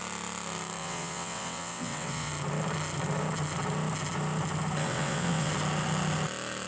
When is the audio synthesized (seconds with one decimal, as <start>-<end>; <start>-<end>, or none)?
0.8-2.3; 4.8-5.5